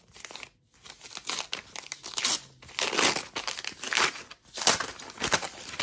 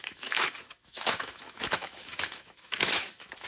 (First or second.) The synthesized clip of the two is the second